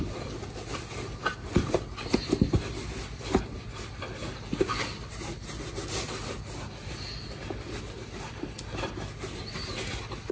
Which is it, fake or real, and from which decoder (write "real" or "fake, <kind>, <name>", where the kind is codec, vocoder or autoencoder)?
real